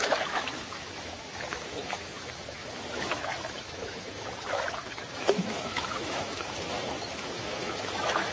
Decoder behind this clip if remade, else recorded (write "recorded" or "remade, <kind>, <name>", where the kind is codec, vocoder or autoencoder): remade, autoencoder, DAC-VAE